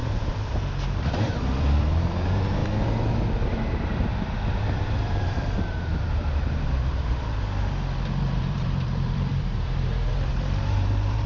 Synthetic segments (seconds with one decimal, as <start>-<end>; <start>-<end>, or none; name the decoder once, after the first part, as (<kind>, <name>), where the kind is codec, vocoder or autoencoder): 1.1-2.6 (vocoder, BigVGAN v2); 3.8-7.4; 8.3-11.3